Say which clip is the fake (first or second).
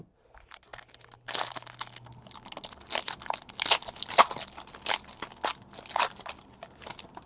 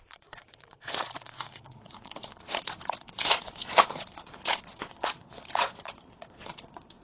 second